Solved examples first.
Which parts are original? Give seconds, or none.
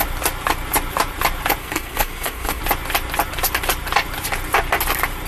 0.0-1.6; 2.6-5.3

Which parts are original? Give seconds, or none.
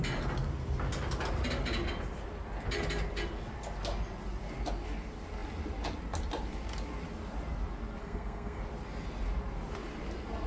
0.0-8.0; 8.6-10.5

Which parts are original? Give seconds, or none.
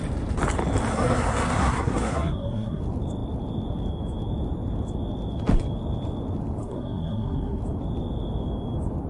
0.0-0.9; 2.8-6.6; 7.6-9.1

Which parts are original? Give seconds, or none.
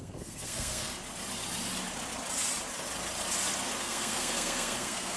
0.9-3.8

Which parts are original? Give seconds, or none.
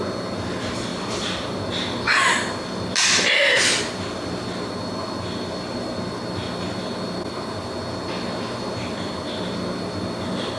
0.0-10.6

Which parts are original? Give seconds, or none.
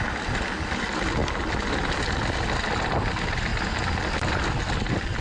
0.0-5.2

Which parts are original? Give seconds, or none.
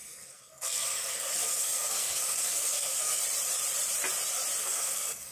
3.2-4.6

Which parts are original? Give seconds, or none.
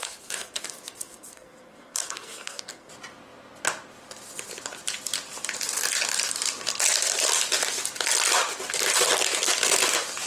2.9-10.3